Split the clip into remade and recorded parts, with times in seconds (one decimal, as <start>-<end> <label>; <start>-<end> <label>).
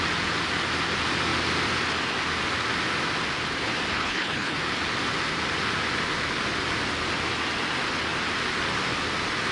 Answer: 0.0-3.9 recorded; 3.9-4.6 remade; 4.6-9.5 recorded